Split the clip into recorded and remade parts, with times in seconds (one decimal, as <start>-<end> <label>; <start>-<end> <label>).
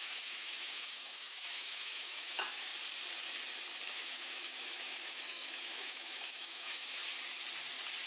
0.0-2.7 remade; 2.7-3.9 recorded; 3.9-7.0 remade; 7.0-8.1 recorded